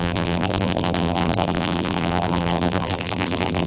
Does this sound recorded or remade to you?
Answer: remade